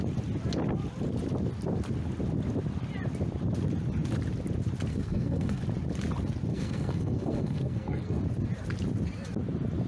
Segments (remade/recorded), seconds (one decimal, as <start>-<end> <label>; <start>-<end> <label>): 0.0-4.9 recorded; 4.9-5.6 remade; 5.6-6.5 recorded; 6.5-8.2 remade; 8.2-9.9 recorded